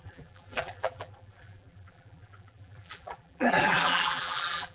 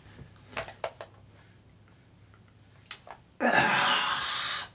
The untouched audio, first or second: second